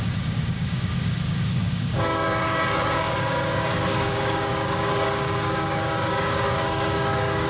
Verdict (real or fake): fake